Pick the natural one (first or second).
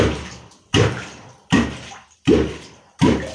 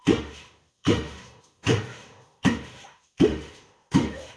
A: first